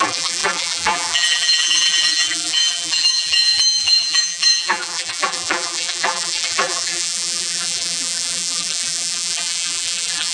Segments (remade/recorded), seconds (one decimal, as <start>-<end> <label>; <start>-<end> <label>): 0.0-10.3 remade